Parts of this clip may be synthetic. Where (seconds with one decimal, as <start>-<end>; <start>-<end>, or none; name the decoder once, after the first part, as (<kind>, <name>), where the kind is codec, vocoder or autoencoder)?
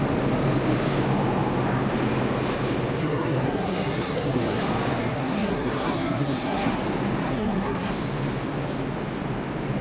3.0-4.6 (codec, SNAC); 5.0-6.8; 7.2-7.9